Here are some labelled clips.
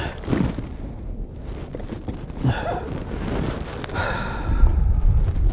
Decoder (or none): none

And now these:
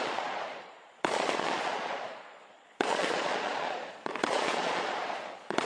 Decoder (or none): vocoder, Vocos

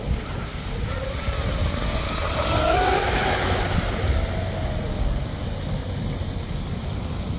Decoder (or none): none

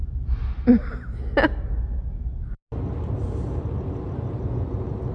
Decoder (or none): none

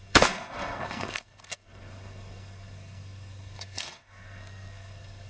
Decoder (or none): codec, SNAC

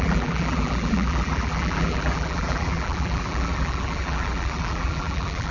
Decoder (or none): vocoder, BigVGAN v2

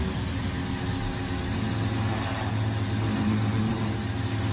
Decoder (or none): none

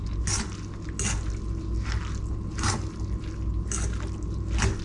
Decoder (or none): none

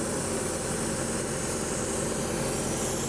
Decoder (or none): none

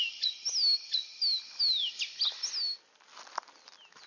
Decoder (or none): none